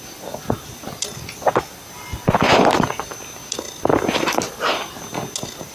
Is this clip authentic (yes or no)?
yes